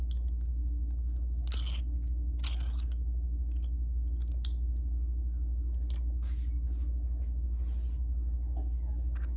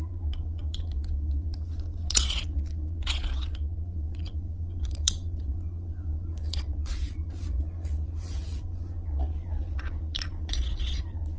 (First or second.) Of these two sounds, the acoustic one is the first